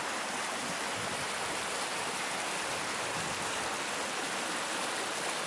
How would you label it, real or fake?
real